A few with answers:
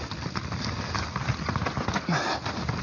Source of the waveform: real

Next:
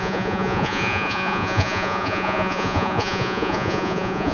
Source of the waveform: fake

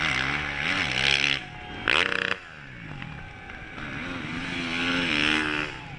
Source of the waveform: real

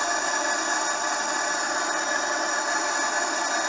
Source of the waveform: real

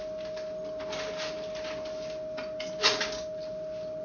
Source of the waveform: real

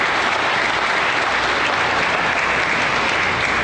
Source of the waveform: real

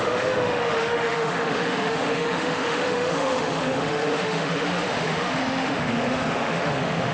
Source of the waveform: fake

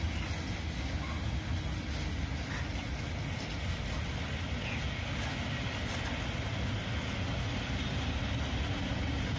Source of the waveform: real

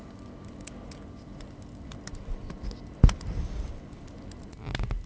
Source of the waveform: real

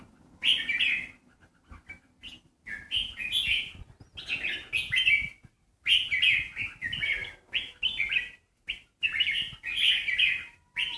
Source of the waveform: real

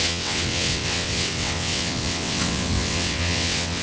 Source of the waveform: fake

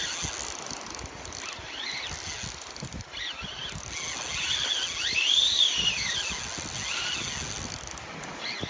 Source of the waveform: real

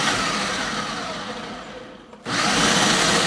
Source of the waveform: real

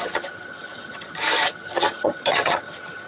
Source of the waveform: fake